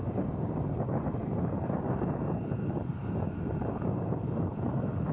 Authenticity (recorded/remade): remade